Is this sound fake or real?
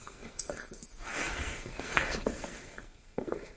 fake